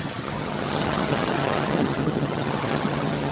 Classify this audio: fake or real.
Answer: fake